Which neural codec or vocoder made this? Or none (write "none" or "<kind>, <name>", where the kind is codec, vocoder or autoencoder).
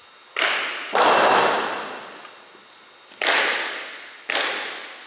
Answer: none